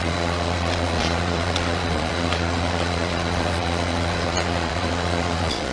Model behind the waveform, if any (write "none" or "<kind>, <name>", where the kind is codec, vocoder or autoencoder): vocoder, Vocos